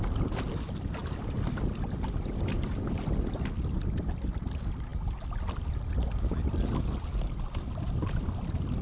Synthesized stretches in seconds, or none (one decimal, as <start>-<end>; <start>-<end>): none